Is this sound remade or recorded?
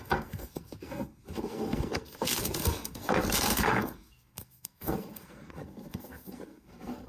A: remade